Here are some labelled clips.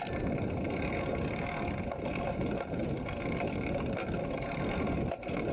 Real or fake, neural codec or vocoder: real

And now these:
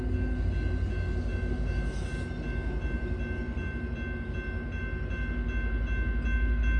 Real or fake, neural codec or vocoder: real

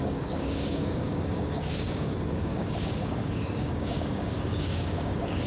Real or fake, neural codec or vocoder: fake, codec, DAC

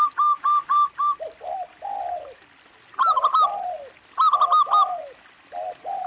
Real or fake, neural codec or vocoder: real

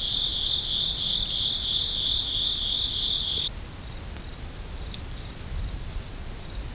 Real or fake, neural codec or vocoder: real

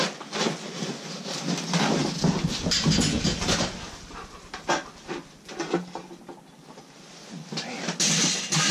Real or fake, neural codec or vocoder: real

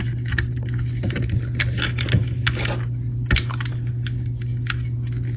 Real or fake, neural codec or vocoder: real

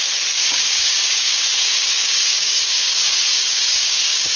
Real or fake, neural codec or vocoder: fake, codec, DAC